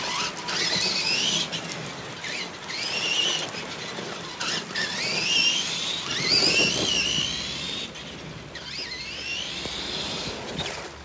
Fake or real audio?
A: real